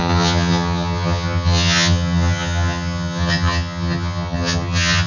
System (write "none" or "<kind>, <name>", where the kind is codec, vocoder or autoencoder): vocoder, HiFi-GAN